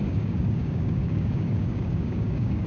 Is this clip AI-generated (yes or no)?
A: yes